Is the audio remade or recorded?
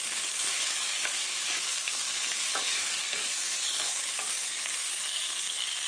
remade